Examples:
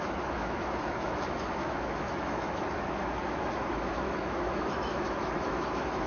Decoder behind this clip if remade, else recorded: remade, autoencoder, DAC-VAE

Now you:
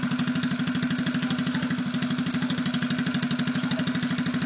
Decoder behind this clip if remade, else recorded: recorded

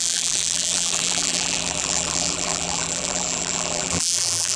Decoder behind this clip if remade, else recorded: remade, vocoder, BigVGAN v2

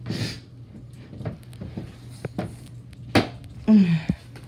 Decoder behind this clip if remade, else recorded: recorded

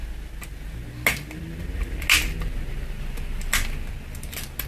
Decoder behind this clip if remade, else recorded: recorded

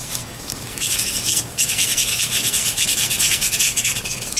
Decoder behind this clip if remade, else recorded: remade, codec, SNAC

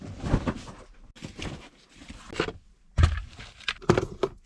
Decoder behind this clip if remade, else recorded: recorded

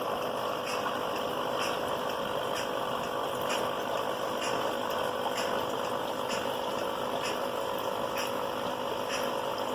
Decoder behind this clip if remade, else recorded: recorded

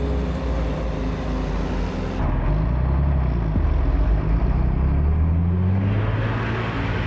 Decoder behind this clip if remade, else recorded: recorded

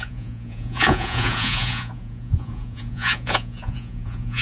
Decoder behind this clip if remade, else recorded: remade, vocoder, Vocos